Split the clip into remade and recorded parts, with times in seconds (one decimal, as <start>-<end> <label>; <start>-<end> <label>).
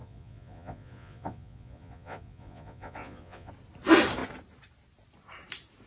0.0-3.5 remade; 3.5-5.9 recorded